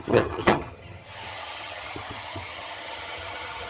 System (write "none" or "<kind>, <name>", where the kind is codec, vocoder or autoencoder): vocoder, HiFi-GAN